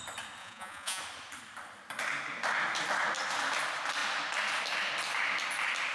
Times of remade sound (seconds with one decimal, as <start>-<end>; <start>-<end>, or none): 0.4-1.0